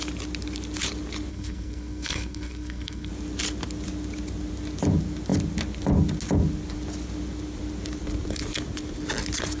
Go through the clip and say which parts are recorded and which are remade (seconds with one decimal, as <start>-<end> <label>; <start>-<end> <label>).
0.0-1.3 recorded; 1.3-3.1 remade; 3.1-9.6 recorded